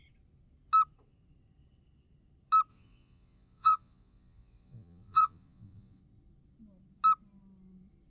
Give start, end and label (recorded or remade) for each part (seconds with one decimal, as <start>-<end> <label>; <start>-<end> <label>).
0.0-2.7 recorded; 2.7-6.0 remade; 6.0-8.1 recorded